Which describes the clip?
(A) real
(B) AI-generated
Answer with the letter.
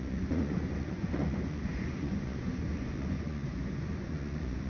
B